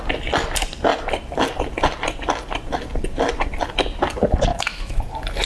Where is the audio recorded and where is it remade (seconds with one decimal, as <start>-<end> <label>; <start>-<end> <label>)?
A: 0.0-4.5 recorded; 4.5-5.0 remade; 5.0-5.5 recorded